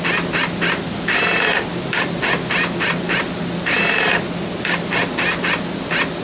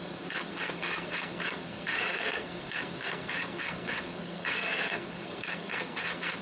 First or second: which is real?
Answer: first